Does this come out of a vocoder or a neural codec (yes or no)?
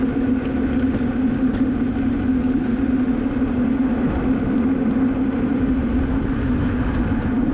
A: no